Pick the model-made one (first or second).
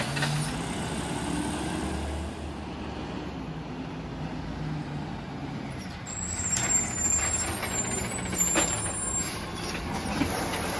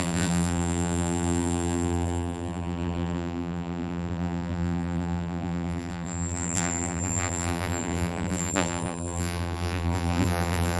second